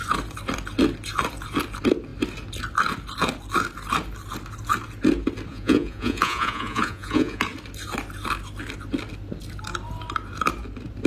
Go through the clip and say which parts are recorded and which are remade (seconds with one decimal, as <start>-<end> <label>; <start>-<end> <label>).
0.0-5.5 recorded; 5.5-7.4 remade; 7.4-11.1 recorded